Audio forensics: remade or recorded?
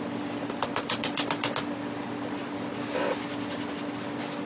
recorded